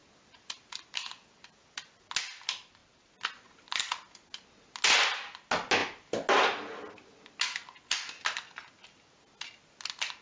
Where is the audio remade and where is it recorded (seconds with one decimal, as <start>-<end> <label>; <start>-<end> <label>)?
0.0-2.1 remade; 2.1-10.2 recorded